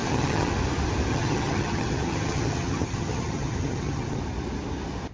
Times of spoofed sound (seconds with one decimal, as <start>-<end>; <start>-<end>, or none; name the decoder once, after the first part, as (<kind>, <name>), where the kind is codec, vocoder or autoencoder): 0.0-0.5 (vocoder, HiFi-GAN); 1.1-4.2